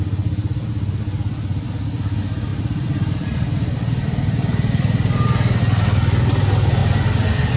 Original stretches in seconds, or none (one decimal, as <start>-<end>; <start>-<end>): 0.0-2.5; 5.6-7.6